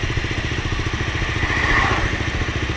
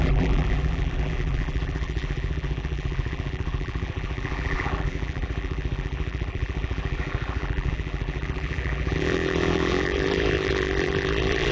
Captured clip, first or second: first